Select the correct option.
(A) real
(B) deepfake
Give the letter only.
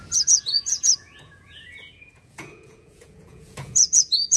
B